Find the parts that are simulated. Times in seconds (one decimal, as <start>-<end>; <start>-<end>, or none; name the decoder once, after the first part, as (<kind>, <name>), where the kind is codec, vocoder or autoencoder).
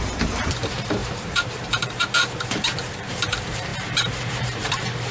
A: 0.0-5.1 (vocoder, BigVGAN v2)